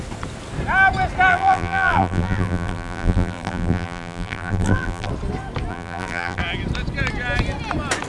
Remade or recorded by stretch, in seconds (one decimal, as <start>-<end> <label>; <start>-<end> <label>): 0.0-1.3 recorded; 1.3-5.1 remade; 5.1-5.7 recorded; 5.7-6.4 remade; 6.4-8.1 recorded